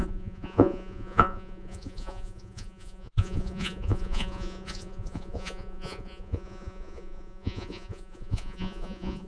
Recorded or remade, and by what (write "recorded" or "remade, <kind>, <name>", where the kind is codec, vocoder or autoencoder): remade, vocoder, Vocos